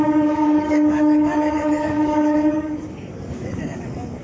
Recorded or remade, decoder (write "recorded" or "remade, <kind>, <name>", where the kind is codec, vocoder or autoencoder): remade, codec, DAC